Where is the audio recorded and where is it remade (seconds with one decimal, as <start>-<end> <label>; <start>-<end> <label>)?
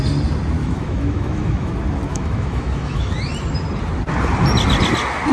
0.0-0.6 recorded; 0.6-1.7 remade; 1.7-2.1 recorded; 2.1-3.1 remade; 3.1-5.3 recorded